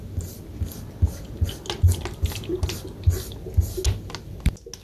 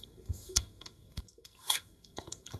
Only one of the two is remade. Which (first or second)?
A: second